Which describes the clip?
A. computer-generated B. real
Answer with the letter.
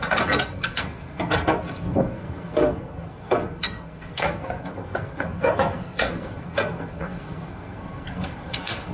A